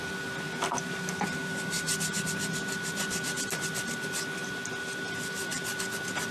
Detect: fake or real real